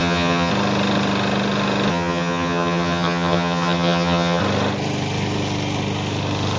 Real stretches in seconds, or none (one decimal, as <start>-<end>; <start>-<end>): 0.5-1.9; 4.4-6.6